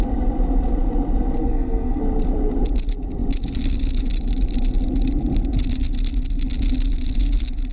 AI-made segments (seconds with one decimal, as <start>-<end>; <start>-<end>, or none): 1.4-2.0